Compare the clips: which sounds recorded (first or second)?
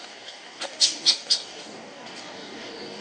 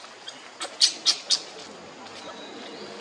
second